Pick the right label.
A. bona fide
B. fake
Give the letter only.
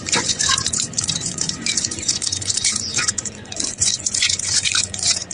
B